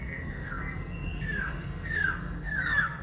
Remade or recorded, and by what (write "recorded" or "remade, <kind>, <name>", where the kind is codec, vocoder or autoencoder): remade, codec, SNAC